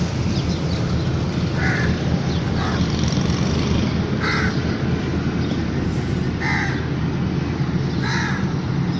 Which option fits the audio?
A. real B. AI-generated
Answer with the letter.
A